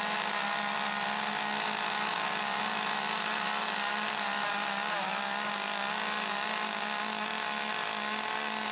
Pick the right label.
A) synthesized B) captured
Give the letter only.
B